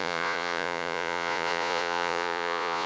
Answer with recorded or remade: remade